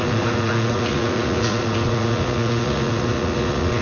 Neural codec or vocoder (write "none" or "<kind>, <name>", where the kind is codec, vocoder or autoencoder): vocoder, Vocos